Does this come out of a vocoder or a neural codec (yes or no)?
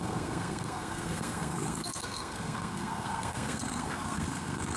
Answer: yes